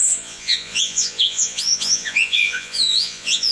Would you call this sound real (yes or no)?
no